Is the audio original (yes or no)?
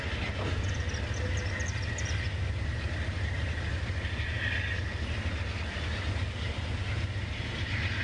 yes